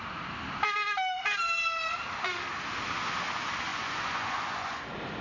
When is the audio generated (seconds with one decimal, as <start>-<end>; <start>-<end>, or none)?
3.7-4.8